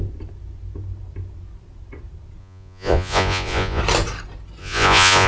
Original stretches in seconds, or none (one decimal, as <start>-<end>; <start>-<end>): 0.0-2.4; 3.8-4.6